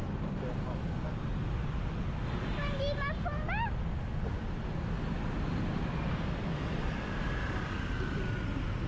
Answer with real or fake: real